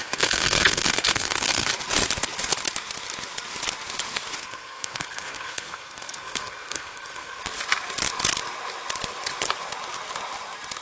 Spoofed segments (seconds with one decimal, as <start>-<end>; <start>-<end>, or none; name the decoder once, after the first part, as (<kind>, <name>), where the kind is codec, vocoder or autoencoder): 0.0-1.7 (codec, SNAC); 4.4-7.4